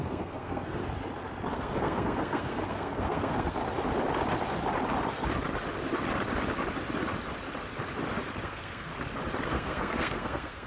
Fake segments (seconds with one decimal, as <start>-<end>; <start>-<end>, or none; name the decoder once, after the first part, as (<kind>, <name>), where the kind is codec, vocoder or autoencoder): 0.0-0.8 (codec, SNAC); 1.5-3.6; 8.4-8.9; 9.5-10.7